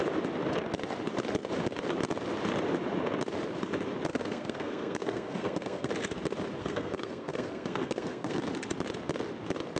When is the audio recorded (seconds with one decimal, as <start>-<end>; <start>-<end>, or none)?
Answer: 0.0-4.1; 5.9-6.6; 8.4-9.8